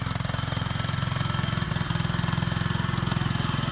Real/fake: real